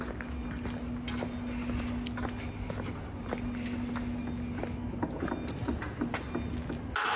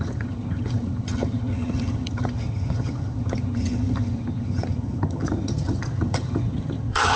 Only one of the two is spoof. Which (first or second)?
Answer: second